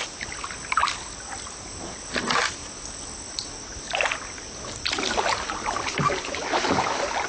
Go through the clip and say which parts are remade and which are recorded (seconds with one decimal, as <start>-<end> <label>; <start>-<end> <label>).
0.0-7.3 recorded